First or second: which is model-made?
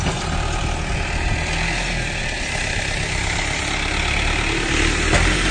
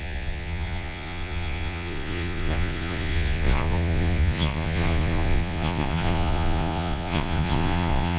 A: second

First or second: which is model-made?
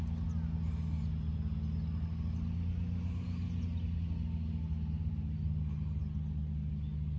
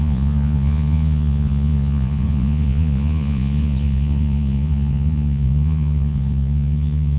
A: second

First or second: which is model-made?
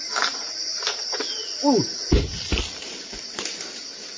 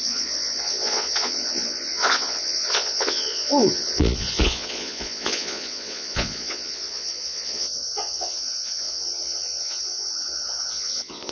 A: second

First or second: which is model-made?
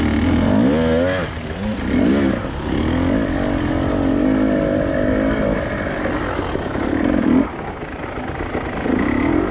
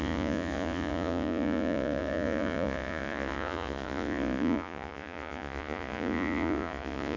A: second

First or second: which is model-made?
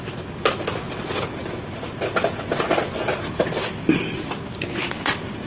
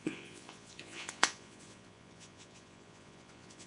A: second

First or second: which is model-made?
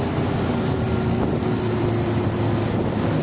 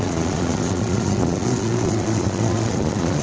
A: second